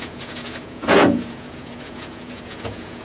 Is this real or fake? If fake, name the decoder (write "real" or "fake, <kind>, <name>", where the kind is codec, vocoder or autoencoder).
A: fake, vocoder, Vocos